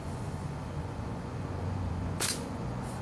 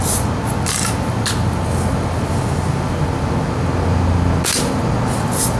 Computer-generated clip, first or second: first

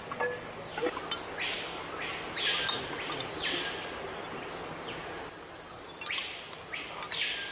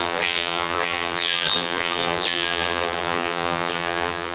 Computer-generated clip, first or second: second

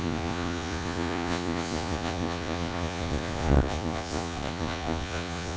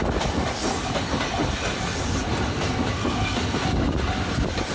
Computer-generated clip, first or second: first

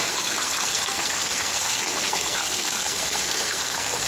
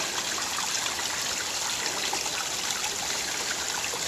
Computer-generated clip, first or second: first